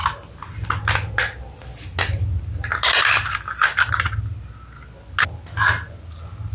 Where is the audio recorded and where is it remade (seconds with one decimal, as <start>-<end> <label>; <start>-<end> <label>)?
0.0-6.5 recorded